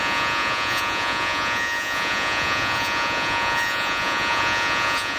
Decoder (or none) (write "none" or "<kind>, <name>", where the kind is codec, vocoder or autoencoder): vocoder, Vocos